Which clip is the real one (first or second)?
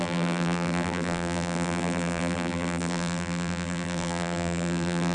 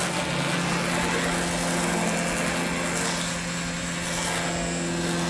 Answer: second